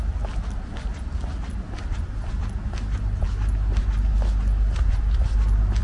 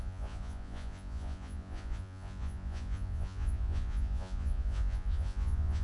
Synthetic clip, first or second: second